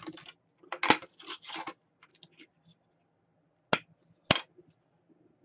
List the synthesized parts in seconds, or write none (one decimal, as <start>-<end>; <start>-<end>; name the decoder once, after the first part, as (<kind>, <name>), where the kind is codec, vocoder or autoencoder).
none